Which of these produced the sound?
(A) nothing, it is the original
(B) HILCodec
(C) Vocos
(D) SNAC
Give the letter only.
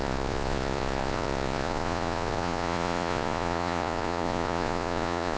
C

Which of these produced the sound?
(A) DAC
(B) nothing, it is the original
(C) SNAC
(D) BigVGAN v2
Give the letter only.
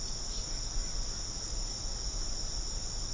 B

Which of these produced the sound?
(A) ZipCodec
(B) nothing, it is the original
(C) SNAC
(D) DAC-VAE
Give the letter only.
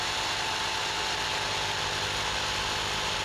B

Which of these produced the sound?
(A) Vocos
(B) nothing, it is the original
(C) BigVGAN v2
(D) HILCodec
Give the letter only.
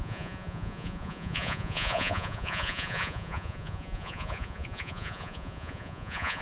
A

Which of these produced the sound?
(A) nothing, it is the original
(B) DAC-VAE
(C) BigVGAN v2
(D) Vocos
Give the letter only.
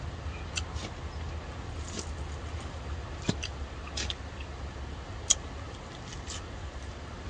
A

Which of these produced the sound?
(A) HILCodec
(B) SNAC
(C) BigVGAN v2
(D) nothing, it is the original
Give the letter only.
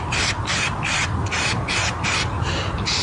D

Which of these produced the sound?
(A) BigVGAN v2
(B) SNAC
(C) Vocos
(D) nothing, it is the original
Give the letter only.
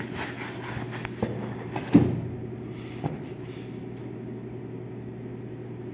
D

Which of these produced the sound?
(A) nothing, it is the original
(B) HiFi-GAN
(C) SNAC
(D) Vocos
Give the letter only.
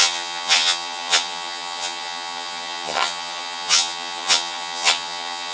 B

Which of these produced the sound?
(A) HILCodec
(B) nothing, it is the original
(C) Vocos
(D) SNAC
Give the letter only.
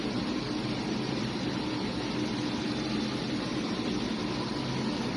B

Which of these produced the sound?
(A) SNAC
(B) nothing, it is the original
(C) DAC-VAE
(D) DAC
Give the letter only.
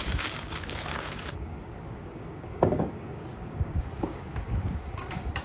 D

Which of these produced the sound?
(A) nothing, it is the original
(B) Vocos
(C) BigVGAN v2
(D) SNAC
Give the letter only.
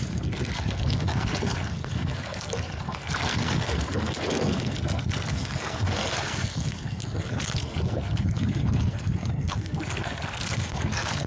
D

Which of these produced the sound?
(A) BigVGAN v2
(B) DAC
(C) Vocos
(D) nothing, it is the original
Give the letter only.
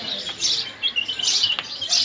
D